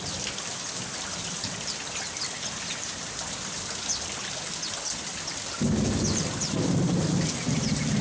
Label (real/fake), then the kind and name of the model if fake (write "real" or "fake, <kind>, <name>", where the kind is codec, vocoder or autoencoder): real